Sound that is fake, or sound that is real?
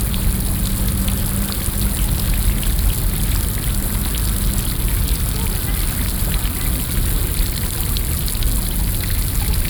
real